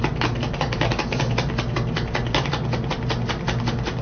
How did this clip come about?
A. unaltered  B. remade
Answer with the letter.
A